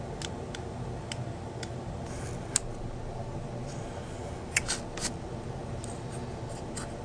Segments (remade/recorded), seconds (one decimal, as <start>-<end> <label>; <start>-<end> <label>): 0.0-7.0 recorded